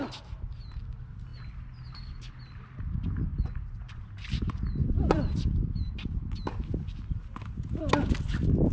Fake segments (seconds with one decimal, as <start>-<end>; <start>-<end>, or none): 3.3-4.0; 4.8-5.3